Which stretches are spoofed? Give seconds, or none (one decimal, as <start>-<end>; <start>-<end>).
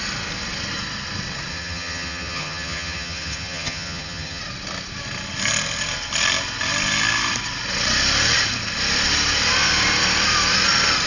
1.5-4.4